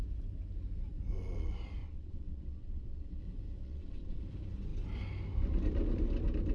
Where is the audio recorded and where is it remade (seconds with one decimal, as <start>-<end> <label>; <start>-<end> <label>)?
0.0-1.8 recorded; 1.8-3.2 remade; 3.2-3.6 recorded; 3.6-4.2 remade; 4.2-6.5 recorded